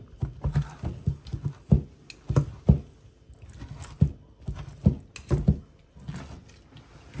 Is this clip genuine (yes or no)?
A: yes